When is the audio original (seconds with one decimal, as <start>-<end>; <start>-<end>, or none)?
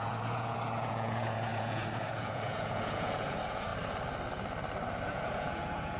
3.7-5.1